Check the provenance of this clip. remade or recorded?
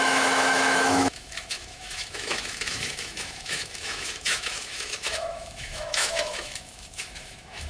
remade